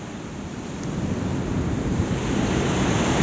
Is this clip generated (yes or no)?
yes